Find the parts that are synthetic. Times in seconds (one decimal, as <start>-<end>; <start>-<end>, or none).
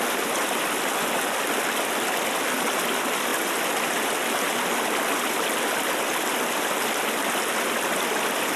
none